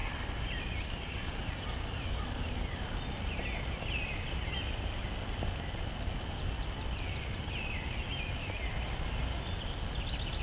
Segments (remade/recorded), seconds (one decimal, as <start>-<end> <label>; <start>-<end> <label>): 0.0-3.4 remade; 3.4-10.4 recorded